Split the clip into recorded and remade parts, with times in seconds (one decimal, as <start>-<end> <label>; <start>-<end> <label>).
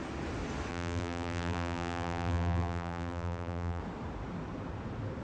0.0-0.7 recorded; 0.7-3.8 remade; 3.8-5.2 recorded